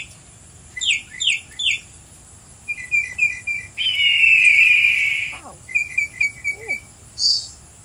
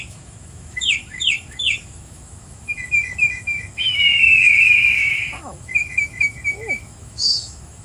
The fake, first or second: second